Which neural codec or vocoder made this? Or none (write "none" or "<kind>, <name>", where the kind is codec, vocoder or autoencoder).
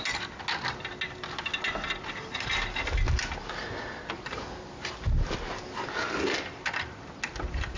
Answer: none